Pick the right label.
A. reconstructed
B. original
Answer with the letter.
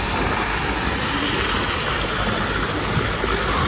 B